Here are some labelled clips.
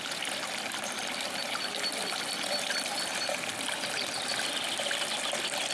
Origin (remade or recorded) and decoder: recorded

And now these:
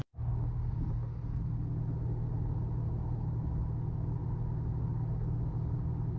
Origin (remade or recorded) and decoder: recorded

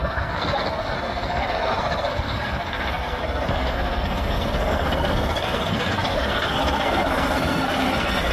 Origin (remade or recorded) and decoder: remade, codec, SNAC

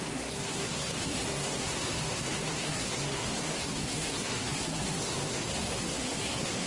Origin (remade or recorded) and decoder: remade, codec, SNAC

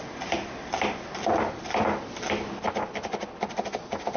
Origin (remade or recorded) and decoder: recorded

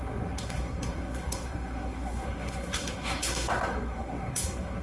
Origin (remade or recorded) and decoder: remade, codec, SNAC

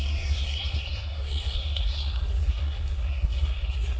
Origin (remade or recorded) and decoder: remade, codec, SNAC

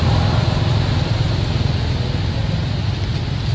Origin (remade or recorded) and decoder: recorded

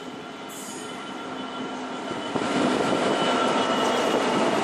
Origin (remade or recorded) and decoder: recorded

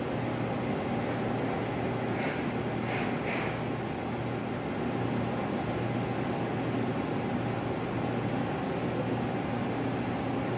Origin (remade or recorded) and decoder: recorded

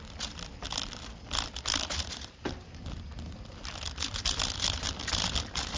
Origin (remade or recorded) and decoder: recorded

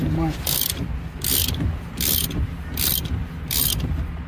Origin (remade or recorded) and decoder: recorded